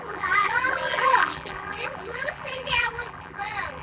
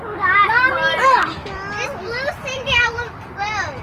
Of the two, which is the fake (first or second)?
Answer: first